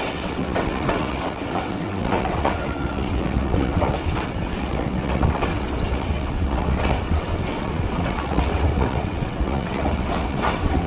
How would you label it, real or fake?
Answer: fake